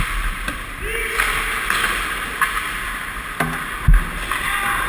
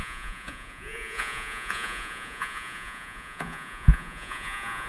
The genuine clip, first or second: first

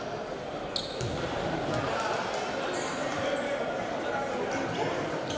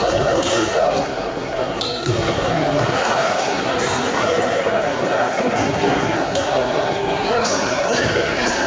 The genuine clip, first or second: first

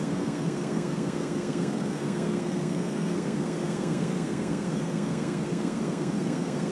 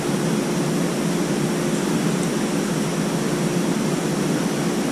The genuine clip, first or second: second